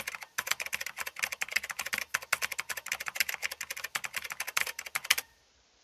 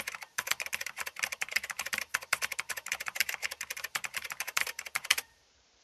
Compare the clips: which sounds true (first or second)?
first